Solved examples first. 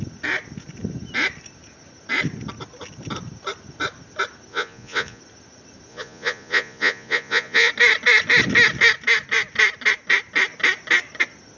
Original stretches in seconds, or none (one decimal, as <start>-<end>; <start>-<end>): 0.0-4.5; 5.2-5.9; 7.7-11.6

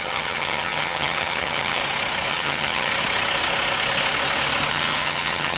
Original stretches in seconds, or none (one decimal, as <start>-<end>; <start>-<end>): 1.8-2.3; 2.9-4.7

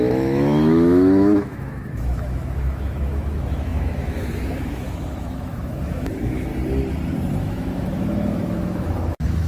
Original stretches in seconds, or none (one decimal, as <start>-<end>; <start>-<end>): 6.5-7.4